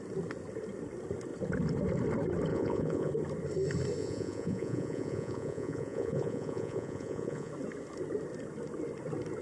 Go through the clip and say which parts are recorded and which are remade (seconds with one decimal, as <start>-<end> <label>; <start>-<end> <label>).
0.0-2.5 recorded; 2.5-3.1 remade; 3.1-4.0 recorded; 4.0-7.5 remade; 7.5-9.4 recorded